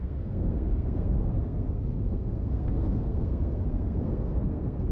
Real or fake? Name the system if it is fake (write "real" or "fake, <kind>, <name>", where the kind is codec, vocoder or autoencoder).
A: fake, codec, SNAC